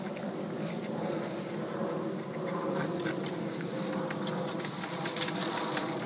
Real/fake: real